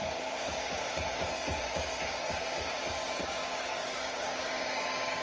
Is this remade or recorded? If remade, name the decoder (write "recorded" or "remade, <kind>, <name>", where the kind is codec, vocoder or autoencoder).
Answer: remade, codec, DAC